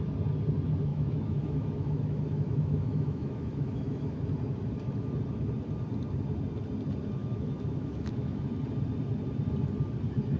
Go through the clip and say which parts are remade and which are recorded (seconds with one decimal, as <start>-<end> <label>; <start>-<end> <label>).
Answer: 0.0-0.9 recorded; 0.9-4.2 remade; 4.2-7.2 recorded; 7.2-8.4 remade; 8.4-10.4 recorded